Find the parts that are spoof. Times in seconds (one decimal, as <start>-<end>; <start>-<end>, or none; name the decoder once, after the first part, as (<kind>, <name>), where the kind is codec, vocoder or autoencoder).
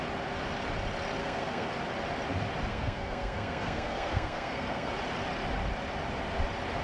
1.2-1.7 (codec, SNAC); 2.7-4.9